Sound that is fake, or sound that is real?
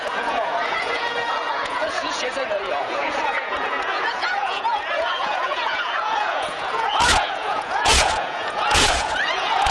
fake